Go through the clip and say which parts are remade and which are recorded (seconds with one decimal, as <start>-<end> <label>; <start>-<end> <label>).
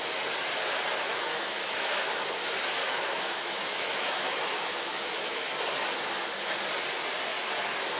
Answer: 0.0-1.1 recorded; 1.1-2.1 remade; 2.1-2.8 recorded; 2.8-5.5 remade; 5.5-8.0 recorded